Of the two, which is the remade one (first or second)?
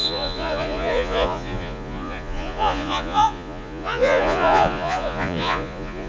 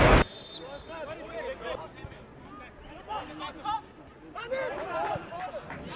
first